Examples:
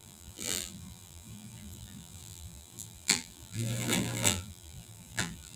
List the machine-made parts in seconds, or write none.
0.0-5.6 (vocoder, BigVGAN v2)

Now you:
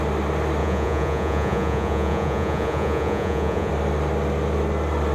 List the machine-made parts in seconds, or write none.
0.6-3.7 (vocoder, Vocos)